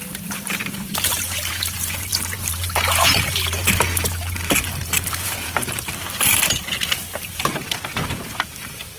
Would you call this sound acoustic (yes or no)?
no